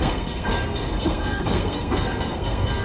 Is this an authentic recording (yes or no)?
no